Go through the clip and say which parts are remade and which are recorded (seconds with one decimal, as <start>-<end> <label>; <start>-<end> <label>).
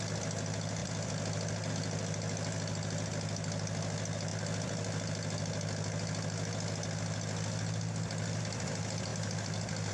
0.0-9.9 recorded